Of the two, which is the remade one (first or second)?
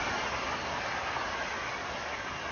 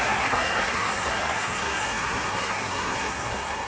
second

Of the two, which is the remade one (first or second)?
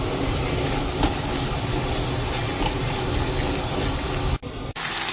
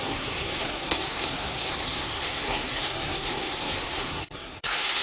second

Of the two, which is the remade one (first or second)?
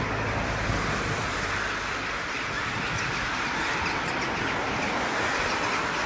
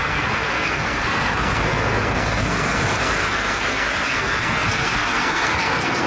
second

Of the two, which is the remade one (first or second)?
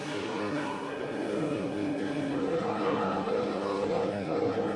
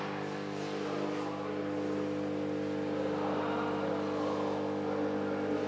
first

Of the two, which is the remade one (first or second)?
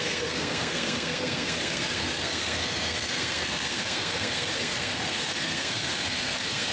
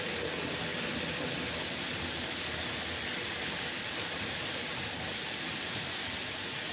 first